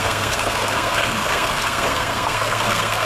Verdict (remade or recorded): remade